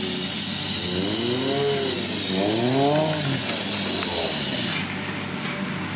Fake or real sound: real